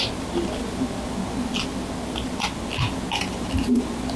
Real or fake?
real